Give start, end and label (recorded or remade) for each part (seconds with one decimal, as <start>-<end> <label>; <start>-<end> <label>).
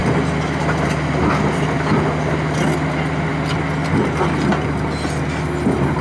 0.0-6.0 recorded